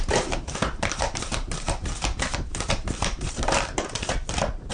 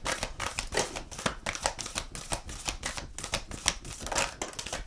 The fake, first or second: first